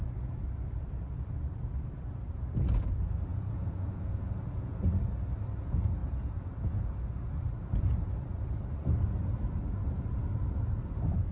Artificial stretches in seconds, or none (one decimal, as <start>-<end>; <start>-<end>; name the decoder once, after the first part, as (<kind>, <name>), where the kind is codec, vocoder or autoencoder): 3.3-4.7 (vocoder, Vocos); 6.0-7.1